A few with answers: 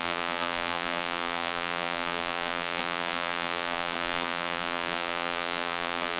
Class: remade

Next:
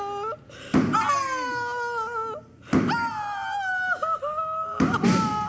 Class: recorded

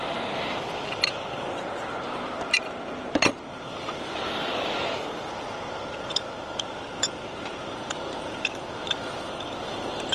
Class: remade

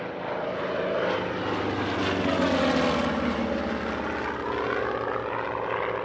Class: recorded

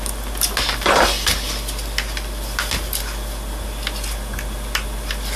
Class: recorded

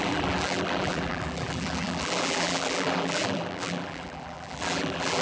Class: remade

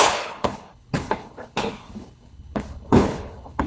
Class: remade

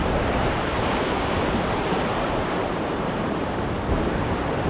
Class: remade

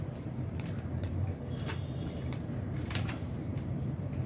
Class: remade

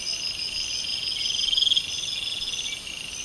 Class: recorded